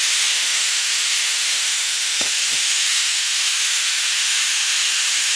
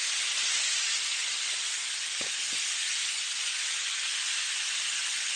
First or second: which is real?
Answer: second